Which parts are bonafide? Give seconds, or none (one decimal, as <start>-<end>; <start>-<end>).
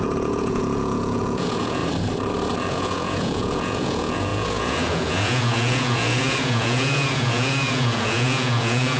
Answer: 1.8-2.7